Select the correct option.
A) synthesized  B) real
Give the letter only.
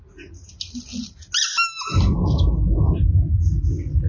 B